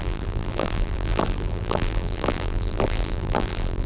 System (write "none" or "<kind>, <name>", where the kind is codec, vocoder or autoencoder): vocoder, BigVGAN v2